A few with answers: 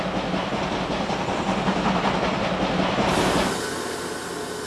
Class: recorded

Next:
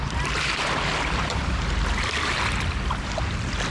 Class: recorded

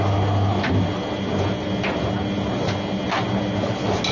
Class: recorded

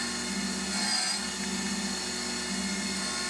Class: recorded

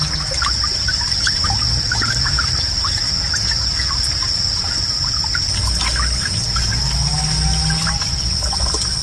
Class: recorded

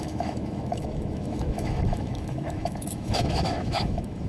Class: remade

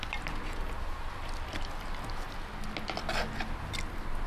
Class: recorded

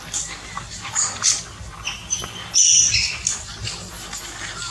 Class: recorded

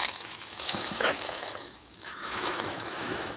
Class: remade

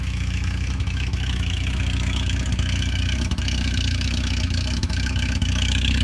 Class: remade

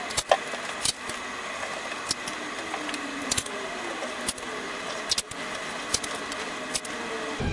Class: recorded